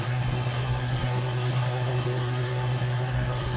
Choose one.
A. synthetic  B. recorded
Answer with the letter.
A